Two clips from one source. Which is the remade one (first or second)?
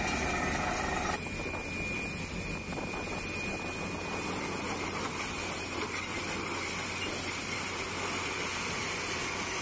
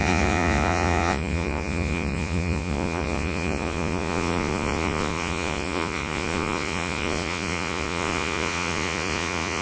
second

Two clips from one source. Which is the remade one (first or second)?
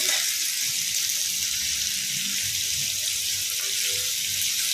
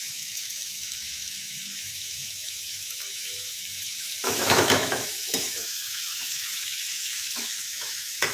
second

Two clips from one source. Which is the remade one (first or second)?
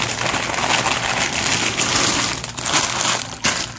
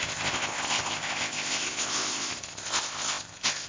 second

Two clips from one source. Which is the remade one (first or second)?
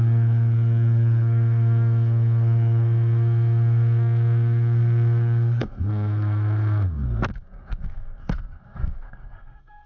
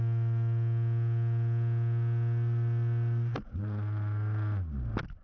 first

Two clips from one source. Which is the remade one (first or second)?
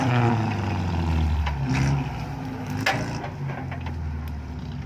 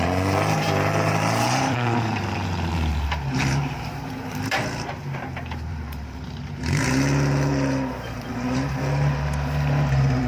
second